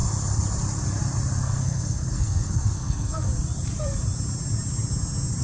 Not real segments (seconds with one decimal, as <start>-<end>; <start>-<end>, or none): 1.4-3.3